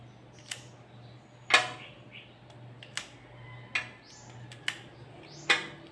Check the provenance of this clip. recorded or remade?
recorded